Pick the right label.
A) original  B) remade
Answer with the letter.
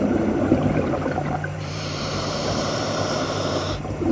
B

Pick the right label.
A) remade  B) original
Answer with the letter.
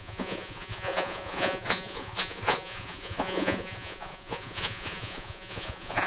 A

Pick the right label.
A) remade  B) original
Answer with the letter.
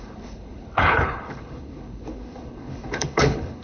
A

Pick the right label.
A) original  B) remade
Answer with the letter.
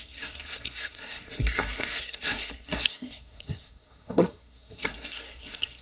B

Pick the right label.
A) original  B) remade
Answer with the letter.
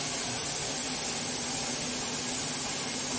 A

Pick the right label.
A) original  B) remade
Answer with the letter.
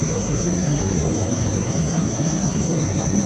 B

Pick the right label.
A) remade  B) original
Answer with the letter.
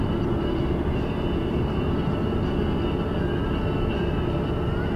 B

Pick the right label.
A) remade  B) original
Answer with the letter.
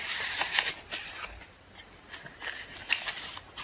B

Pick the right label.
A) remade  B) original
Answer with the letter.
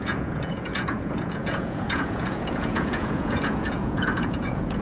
A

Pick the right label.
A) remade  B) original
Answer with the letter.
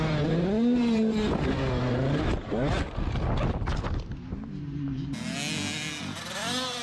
B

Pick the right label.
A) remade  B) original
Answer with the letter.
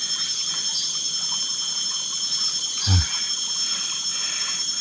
B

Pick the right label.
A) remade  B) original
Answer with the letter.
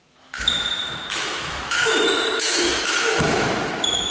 A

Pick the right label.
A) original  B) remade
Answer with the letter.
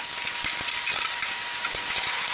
A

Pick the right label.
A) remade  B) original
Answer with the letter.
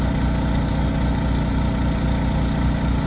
B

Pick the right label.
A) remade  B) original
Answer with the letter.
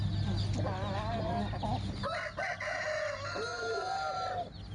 B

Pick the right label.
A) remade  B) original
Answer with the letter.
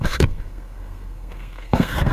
A